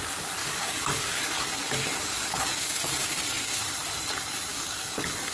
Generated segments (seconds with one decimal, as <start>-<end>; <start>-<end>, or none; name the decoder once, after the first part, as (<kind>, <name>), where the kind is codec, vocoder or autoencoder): 0.4-3.6 (codec, DAC); 4.5-5.3